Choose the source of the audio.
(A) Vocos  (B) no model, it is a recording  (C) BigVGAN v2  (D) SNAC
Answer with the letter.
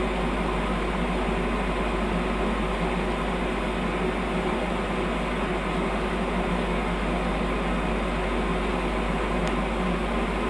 B